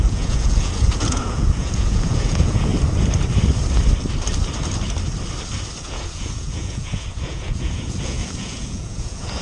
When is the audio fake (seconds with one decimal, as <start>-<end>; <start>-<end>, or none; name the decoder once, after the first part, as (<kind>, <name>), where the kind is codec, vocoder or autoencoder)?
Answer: 0.0-2.7 (vocoder, Vocos); 5.8-9.4